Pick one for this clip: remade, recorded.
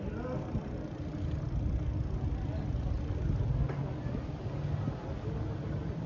recorded